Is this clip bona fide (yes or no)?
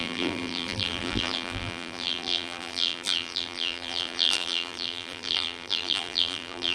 no